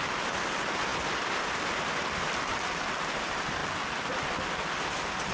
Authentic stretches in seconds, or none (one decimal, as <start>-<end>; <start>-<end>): 3.6-4.8